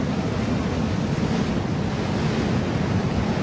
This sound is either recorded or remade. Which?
recorded